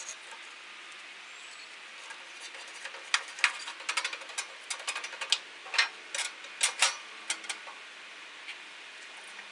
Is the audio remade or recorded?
recorded